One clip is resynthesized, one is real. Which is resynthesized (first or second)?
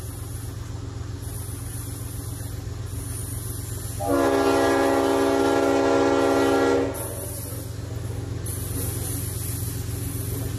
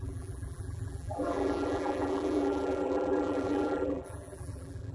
second